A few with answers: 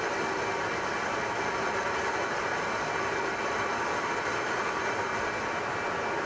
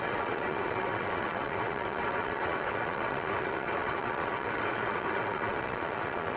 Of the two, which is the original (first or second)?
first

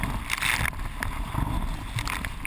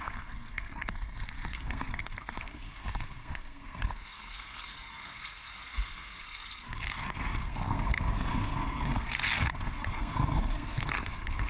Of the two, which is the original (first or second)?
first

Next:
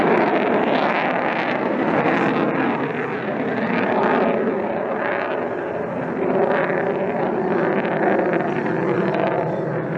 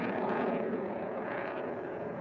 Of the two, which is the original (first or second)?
first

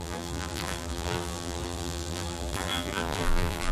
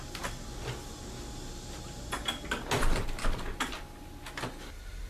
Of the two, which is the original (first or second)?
second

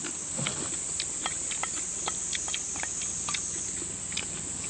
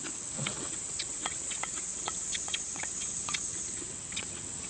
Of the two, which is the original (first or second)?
first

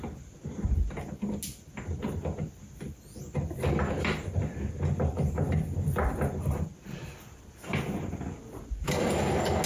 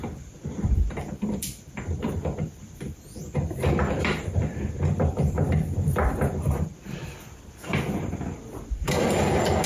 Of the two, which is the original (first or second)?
first